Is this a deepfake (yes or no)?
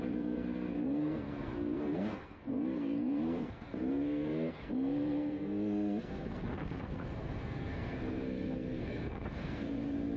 yes